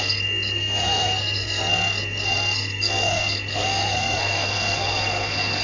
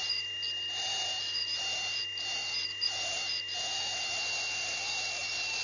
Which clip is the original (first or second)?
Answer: second